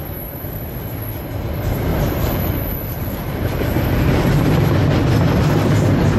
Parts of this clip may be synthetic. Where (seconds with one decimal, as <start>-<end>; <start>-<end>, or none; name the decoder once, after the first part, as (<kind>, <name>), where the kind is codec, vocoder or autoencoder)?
1.9-4.6 (vocoder, BigVGAN v2)